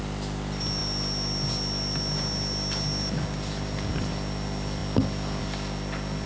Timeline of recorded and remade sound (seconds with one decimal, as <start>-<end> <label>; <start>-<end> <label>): 0.0-6.3 recorded